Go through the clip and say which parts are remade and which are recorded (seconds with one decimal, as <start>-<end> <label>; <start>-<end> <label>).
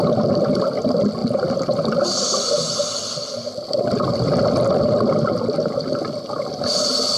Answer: 0.0-7.2 recorded